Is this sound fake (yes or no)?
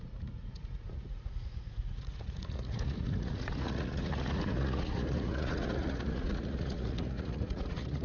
yes